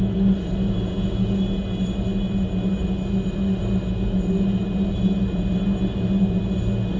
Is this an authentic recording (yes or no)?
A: yes